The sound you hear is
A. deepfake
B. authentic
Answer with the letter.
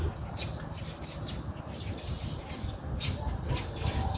B